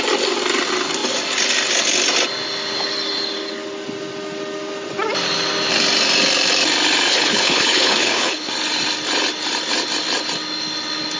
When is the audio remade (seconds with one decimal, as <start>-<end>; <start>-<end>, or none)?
7.1-8.5